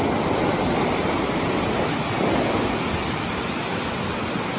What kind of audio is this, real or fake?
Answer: real